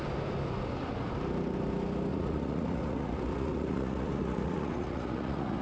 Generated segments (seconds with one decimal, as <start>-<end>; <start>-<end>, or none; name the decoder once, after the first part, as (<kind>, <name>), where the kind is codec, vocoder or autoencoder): 2.1-5.6 (vocoder, Vocos)